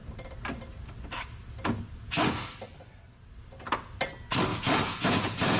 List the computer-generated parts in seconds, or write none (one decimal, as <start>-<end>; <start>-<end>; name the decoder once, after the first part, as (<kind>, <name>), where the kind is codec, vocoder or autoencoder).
4.5-5.6 (vocoder, Vocos)